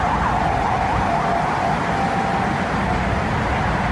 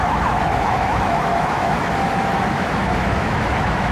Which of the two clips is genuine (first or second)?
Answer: first